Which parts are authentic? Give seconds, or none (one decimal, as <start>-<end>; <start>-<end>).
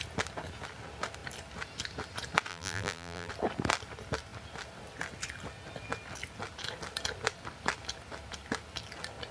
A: 0.0-2.5; 3.3-9.3